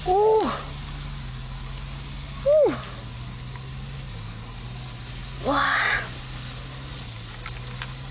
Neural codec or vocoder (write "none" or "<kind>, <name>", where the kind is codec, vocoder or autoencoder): none